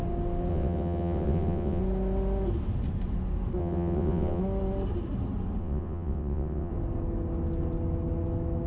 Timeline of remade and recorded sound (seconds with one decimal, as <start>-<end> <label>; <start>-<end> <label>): 0.0-0.5 recorded; 0.5-1.8 remade; 1.8-3.6 recorded; 3.6-4.4 remade; 4.4-5.6 recorded; 5.6-6.7 remade; 6.7-8.7 recorded